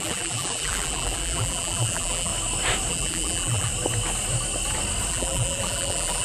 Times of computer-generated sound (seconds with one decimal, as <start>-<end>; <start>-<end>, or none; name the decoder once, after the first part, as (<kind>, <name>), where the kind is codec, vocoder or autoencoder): 0.0-2.3 (vocoder, BigVGAN v2); 2.9-3.7; 5.1-6.2